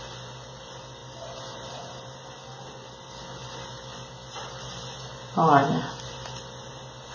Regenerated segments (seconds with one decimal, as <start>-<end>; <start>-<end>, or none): 3.9-4.8